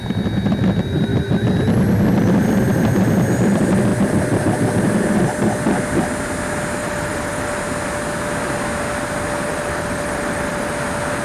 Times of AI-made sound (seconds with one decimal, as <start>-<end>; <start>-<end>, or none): 6.8-7.5; 9.5-10.7